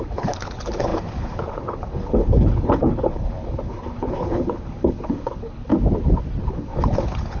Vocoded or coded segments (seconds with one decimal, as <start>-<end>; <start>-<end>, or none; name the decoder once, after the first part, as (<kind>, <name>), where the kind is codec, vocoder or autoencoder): 0.0-5.7 (codec, HILCodec); 6.4-7.4